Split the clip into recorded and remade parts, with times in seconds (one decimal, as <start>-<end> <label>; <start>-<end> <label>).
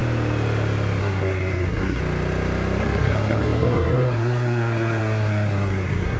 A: 0.0-1.0 recorded; 1.0-2.0 remade; 2.0-2.8 recorded; 2.8-6.2 remade